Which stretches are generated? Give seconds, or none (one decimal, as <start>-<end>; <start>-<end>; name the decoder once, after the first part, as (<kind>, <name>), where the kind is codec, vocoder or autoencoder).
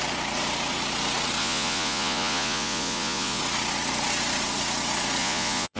1.4-3.4 (vocoder, Vocos); 5.2-5.8